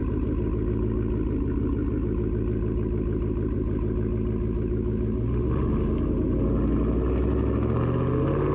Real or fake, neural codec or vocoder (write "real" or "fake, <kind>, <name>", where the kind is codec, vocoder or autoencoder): real